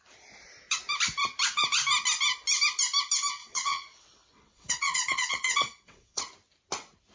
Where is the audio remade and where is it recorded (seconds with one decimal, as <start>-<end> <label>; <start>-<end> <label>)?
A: 0.0-3.4 recorded; 3.4-6.2 remade; 6.2-7.1 recorded